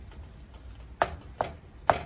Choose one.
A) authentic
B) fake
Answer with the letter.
A